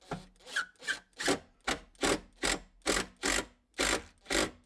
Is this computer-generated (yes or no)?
no